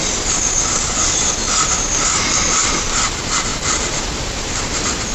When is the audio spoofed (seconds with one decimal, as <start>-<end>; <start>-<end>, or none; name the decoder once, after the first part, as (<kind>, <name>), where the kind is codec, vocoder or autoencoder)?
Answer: 0.9-1.4 (vocoder, BigVGAN v2); 2.3-5.1